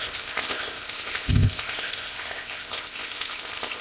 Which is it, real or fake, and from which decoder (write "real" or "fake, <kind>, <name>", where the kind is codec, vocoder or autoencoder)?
fake, codec, ZipCodec